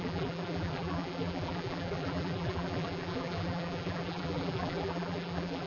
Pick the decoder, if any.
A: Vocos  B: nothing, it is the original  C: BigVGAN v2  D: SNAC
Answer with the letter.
C